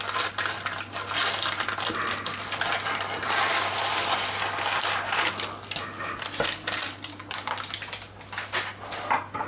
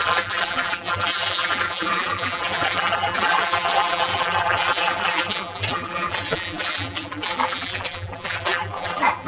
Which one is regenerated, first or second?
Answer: second